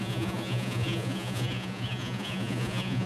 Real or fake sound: fake